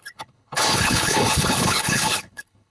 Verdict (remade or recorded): remade